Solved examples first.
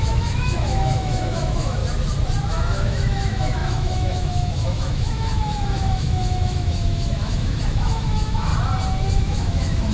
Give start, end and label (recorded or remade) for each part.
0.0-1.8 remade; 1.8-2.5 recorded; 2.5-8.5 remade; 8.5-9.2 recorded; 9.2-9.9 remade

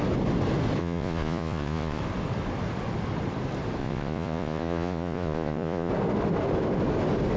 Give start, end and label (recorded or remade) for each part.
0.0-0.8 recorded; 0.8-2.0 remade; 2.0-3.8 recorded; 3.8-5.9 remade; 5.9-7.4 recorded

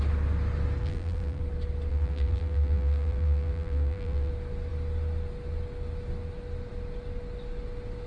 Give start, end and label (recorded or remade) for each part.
0.0-0.8 recorded; 0.8-1.4 remade; 1.4-1.9 recorded; 1.9-4.3 remade; 4.3-8.1 recorded

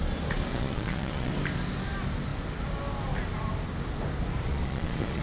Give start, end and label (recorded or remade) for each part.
0.0-0.5 recorded; 0.5-1.3 remade; 1.3-4.5 recorded; 4.5-5.2 remade

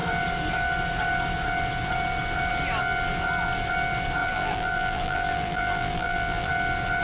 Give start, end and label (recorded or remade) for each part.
0.0-4.2 recorded; 4.2-6.5 remade; 6.5-7.0 recorded